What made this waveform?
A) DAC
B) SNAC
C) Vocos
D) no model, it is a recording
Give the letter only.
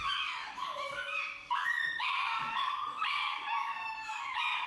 A